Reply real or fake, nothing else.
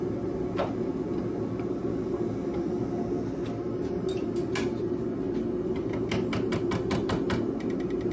real